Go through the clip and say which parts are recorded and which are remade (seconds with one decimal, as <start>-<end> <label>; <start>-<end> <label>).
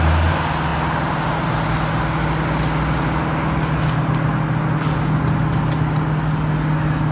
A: 0.0-7.1 recorded